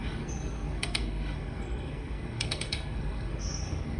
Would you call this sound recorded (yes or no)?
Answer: no